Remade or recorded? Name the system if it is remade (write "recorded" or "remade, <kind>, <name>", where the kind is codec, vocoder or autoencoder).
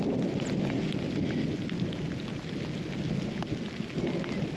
recorded